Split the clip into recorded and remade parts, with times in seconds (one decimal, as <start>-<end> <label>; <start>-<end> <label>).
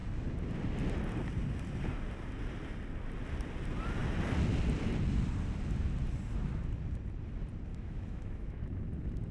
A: 0.0-7.7 recorded; 7.7-8.7 remade; 8.7-9.3 recorded